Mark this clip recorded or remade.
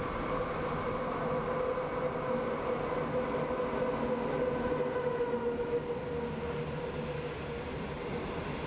recorded